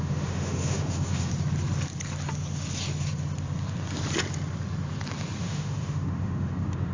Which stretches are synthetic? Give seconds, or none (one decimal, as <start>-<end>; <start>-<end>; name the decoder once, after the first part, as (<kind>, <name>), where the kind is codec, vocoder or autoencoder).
0.0-1.3 (autoencoder, DAC-VAE); 5.4-6.9